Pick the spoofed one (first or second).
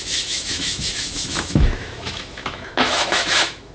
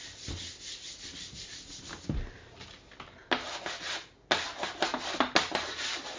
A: first